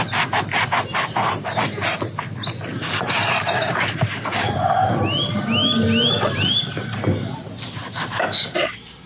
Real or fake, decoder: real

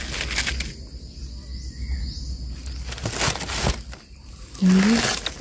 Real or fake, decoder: real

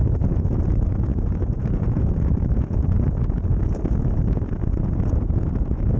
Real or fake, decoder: fake, vocoder, Vocos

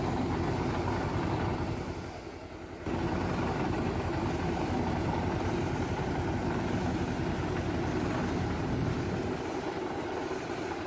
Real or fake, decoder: real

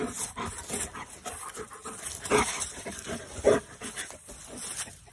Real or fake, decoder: real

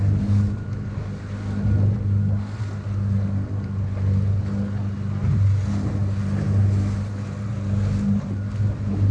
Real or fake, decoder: real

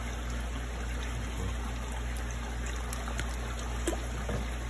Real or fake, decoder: real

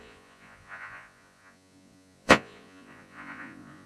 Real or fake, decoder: fake, vocoder, Vocos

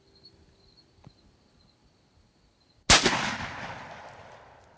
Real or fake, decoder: real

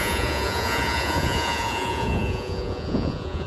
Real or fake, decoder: fake, vocoder, Vocos